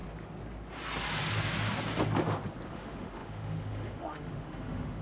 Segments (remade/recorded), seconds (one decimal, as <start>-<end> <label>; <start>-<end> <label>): 0.0-2.7 recorded; 2.7-5.0 remade